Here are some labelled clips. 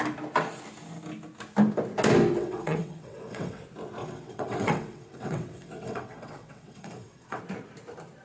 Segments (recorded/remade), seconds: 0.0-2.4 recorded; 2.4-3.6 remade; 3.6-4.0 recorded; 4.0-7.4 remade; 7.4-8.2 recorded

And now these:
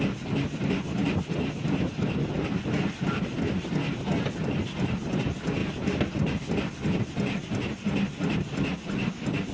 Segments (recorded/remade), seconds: 0.0-9.5 recorded

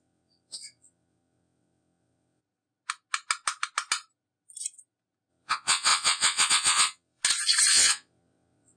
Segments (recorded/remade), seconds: 0.0-2.4 remade; 2.4-5.3 recorded; 5.3-7.2 remade; 7.2-7.7 recorded; 7.7-8.8 remade